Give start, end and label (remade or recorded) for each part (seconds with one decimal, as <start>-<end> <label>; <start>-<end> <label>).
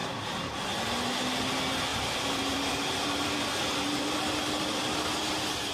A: 0.0-1.9 recorded; 1.9-5.3 remade; 5.3-5.7 recorded